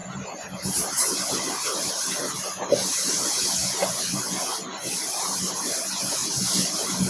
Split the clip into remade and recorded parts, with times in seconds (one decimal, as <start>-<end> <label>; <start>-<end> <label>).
0.0-0.9 remade; 0.9-2.9 recorded; 2.9-4.2 remade; 4.2-4.7 recorded; 4.7-5.7 remade; 5.7-6.2 recorded; 6.2-7.1 remade